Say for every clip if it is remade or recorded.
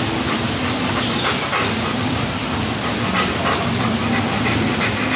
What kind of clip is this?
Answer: recorded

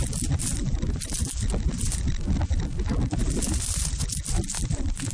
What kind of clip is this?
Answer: recorded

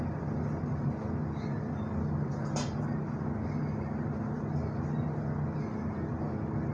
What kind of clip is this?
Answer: recorded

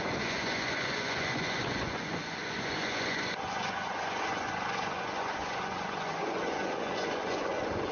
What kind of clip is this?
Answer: remade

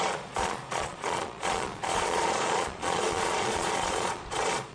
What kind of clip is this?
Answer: remade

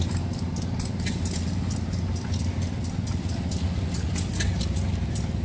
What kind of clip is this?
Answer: recorded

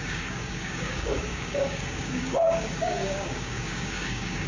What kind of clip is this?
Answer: remade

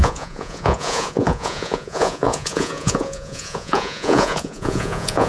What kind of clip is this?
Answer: remade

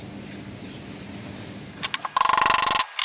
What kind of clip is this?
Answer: recorded